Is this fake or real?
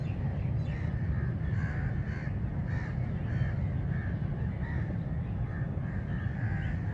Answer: real